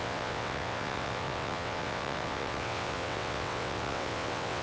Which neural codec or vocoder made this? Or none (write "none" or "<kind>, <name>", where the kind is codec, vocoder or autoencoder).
vocoder, WaveNeXt